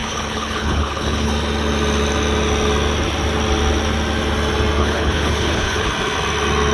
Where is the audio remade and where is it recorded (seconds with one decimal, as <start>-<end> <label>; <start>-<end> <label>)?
0.0-1.3 remade; 1.3-4.8 recorded; 4.8-5.9 remade; 5.9-6.7 recorded